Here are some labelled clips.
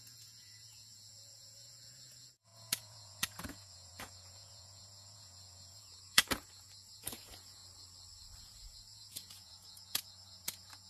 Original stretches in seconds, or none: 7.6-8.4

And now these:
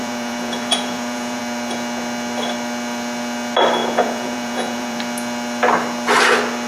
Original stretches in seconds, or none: 1.4-3.8; 5.0-6.7

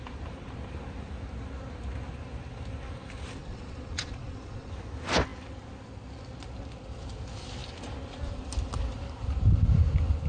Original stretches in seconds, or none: 0.0-3.4; 4.7-10.3

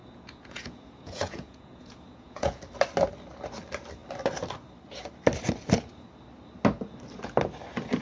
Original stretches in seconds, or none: 2.6-8.0

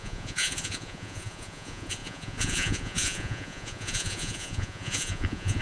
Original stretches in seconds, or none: none

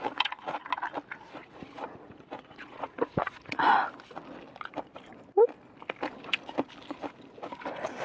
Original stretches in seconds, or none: 0.6-1.4; 3.6-8.0

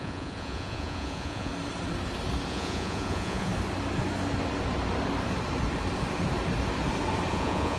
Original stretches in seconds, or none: 1.5-2.5; 3.5-7.3

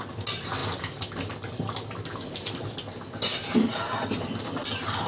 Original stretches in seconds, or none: 0.0-5.1